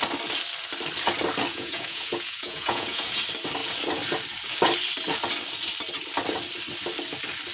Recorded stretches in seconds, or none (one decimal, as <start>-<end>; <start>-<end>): 0.0-1.5; 3.2-7.5